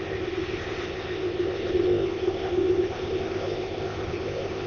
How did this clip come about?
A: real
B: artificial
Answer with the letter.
B